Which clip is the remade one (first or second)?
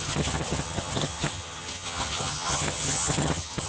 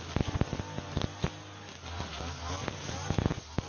first